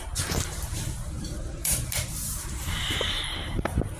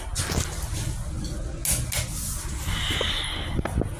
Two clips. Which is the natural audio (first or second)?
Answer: second